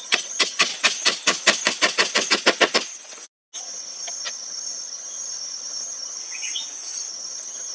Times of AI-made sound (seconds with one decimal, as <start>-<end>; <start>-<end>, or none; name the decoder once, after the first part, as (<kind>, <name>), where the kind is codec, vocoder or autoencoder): 0.0-0.7 (vocoder, HiFi-GAN); 3.6-6.2; 7.1-7.7